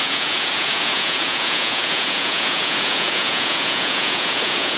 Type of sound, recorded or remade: remade